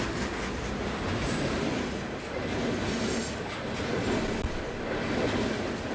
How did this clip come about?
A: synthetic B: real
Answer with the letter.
B